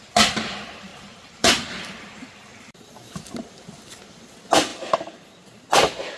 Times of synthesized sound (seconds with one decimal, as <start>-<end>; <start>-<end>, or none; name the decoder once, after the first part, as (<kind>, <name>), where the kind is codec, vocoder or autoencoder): 0.9-3.9 (vocoder, BigVGAN v2); 4.7-5.3